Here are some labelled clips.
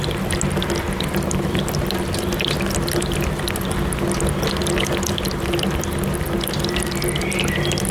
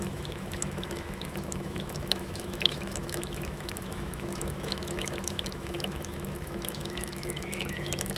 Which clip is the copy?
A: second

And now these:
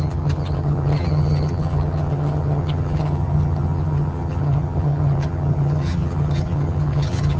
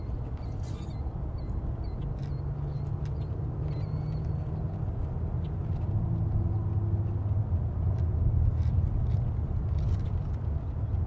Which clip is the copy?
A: first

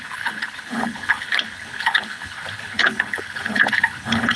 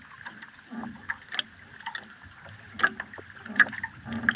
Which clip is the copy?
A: first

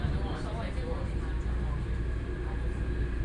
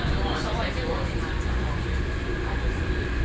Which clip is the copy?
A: second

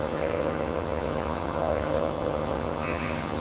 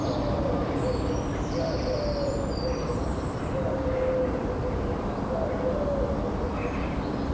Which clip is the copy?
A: first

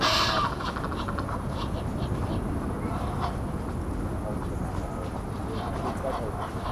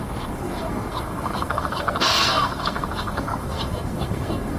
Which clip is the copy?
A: second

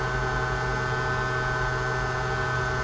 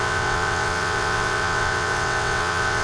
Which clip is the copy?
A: second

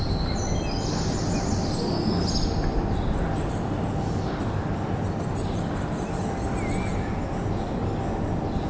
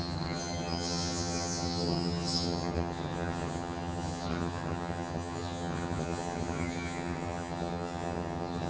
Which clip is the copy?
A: second